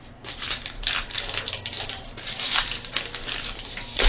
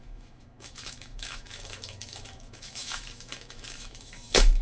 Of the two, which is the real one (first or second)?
first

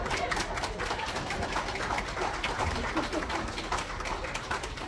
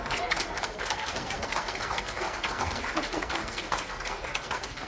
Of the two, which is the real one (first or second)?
first